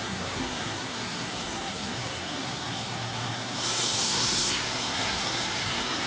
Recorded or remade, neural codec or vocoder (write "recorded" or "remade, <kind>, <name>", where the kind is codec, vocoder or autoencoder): remade, codec, SNAC